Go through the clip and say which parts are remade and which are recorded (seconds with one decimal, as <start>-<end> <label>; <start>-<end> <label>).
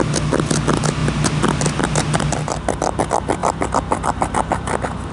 0.0-5.1 recorded